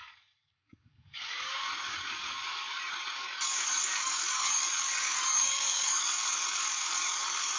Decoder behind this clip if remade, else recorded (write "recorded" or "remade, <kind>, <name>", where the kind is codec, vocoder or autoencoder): remade, codec, DAC